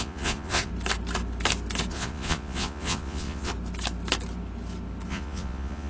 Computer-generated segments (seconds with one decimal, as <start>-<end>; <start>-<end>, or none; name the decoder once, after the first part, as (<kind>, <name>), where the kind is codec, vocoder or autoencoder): 0.0-0.7 (vocoder, Vocos); 1.9-3.5; 5.1-5.9